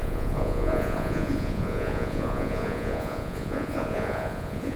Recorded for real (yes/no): no